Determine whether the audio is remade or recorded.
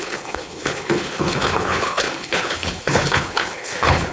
remade